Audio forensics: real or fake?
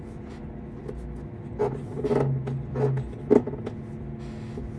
real